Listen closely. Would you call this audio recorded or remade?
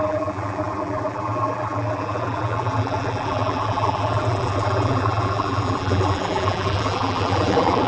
remade